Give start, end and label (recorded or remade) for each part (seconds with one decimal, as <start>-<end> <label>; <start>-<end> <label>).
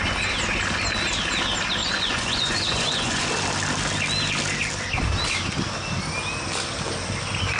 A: 0.0-1.8 recorded; 1.8-3.3 remade; 3.3-7.6 recorded